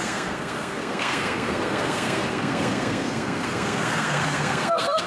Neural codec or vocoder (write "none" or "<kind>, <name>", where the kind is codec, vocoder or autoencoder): codec, SNAC